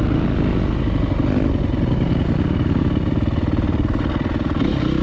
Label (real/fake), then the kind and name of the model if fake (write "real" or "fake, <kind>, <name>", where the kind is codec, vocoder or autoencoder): real